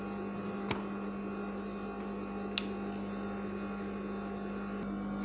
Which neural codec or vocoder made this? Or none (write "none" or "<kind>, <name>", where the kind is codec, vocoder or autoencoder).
none